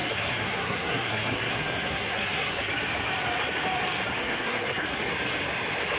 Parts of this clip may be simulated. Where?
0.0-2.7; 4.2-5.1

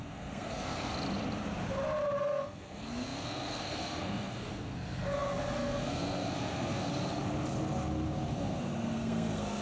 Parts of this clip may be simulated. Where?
0.0-0.9; 2.2-6.9; 8.3-9.6

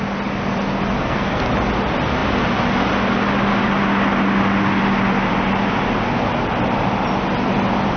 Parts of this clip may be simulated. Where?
1.0-1.5